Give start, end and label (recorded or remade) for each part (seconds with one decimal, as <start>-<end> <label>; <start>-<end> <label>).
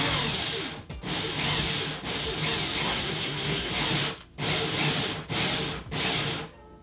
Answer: 0.0-2.8 recorded; 2.8-3.7 remade; 3.7-6.8 recorded